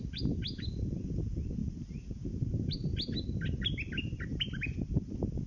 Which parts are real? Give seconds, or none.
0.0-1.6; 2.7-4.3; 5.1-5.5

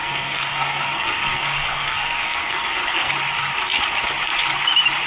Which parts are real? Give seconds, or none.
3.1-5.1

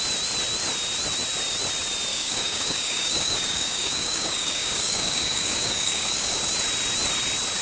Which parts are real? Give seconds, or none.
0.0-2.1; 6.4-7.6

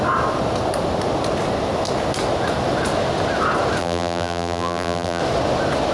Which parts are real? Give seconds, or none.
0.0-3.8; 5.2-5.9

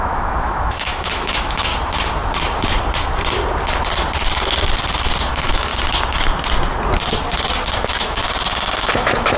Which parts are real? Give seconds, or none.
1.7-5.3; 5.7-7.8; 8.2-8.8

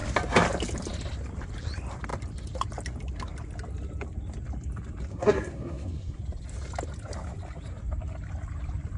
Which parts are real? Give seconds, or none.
0.0-5.1; 6.2-9.0